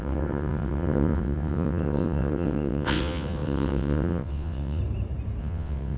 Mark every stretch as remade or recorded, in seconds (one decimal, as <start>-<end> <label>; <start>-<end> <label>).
0.0-4.8 remade; 4.8-5.4 recorded; 5.4-6.0 remade